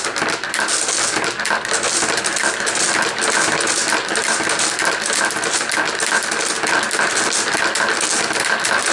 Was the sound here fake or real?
real